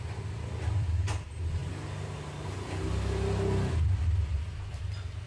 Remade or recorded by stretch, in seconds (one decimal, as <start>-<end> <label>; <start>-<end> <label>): 0.0-1.6 remade; 1.6-4.8 recorded; 4.8-5.3 remade